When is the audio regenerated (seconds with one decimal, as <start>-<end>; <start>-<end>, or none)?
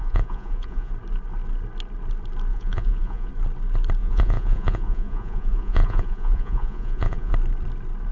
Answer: 0.0-0.9; 2.5-3.3; 4.0-7.3